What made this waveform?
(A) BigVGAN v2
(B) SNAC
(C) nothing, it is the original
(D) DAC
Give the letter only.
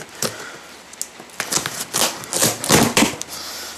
C